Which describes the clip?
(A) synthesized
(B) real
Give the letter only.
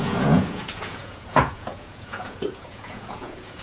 A